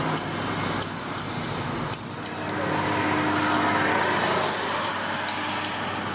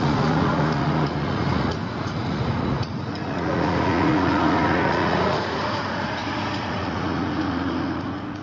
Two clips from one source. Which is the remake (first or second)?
second